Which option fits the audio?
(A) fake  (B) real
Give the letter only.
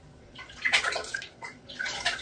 A